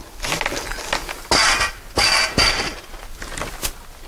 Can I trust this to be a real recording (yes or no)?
yes